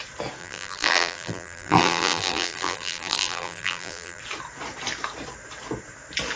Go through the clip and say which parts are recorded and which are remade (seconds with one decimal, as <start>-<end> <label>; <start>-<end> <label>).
0.0-0.4 recorded; 0.4-4.2 remade; 4.2-6.4 recorded

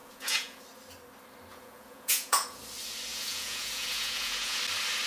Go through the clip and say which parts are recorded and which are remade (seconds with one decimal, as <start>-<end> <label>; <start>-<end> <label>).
0.0-0.6 remade; 0.6-1.5 recorded; 1.5-2.6 remade; 2.6-3.1 recorded; 3.1-4.6 remade; 4.6-5.1 recorded

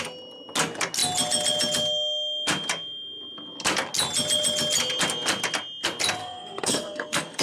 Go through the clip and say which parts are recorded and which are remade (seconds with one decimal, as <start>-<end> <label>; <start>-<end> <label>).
0.0-6.2 recorded; 6.2-7.4 remade

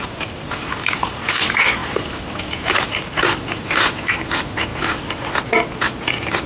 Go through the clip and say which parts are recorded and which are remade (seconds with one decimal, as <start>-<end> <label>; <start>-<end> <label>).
0.0-6.5 recorded